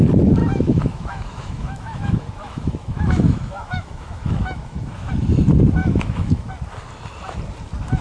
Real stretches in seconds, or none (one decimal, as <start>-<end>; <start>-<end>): 0.0-0.4; 5.1-5.8; 6.5-8.0